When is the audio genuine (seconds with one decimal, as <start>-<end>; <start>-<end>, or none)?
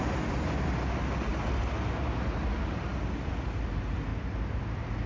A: 0.0-4.1; 4.6-5.1